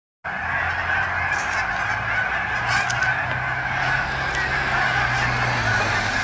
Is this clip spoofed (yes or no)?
no